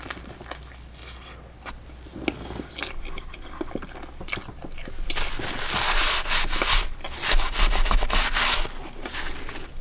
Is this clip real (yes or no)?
yes